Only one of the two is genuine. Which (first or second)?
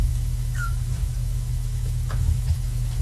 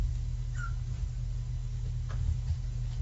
second